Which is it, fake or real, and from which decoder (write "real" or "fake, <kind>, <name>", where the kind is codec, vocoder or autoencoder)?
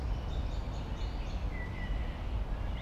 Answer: real